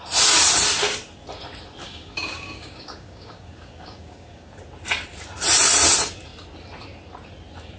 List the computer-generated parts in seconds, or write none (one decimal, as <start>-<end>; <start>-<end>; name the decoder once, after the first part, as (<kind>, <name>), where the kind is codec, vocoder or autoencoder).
1.8-4.6 (codec, DAC)